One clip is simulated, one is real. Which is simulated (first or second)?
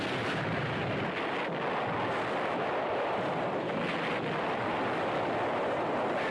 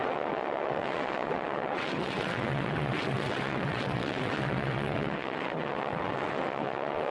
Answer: second